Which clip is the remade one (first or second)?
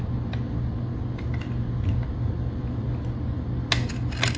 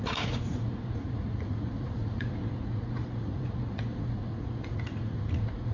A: second